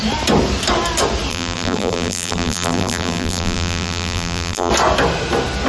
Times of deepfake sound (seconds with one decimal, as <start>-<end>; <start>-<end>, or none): 1.3-4.7